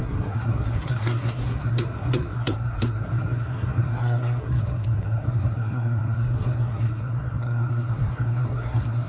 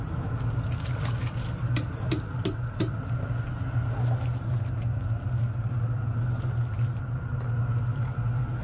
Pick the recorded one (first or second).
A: second